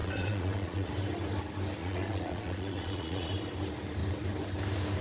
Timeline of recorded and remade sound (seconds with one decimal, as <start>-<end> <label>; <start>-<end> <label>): 0.0-0.9 remade; 0.9-1.8 recorded; 1.8-3.3 remade; 3.3-5.0 recorded